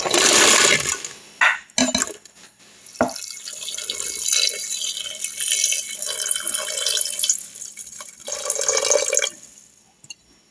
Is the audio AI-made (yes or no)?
no